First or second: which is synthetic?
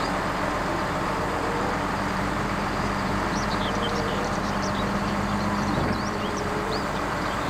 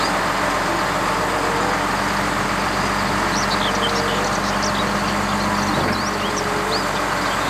first